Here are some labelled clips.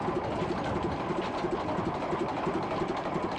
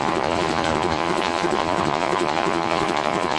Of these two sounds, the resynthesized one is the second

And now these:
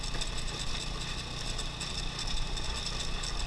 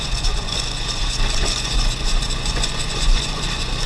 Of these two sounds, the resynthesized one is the second